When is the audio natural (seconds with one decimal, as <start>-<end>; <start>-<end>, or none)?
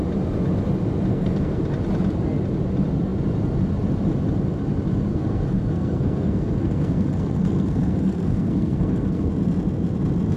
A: 0.0-1.1; 1.6-5.1; 9.3-10.4